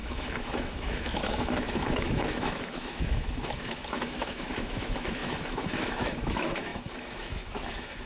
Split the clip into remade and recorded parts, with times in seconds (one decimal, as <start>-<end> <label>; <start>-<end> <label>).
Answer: 0.0-8.1 remade